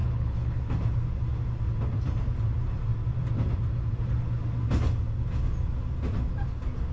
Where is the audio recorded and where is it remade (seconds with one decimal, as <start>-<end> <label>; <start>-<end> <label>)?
0.0-0.6 remade; 0.6-6.9 recorded